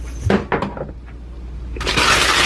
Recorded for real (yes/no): yes